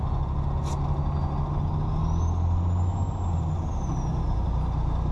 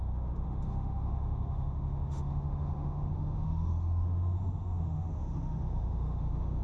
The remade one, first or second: second